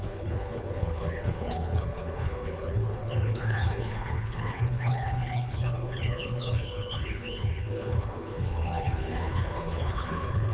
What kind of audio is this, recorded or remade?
remade